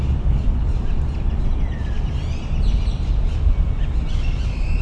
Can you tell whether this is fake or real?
real